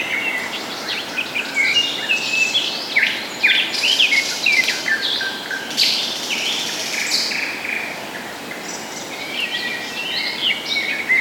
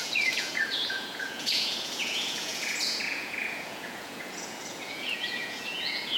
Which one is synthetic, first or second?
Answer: second